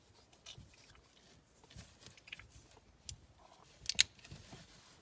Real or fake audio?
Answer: real